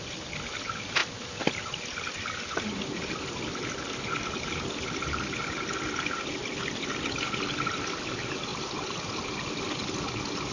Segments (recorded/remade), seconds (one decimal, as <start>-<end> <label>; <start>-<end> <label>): 0.0-10.5 recorded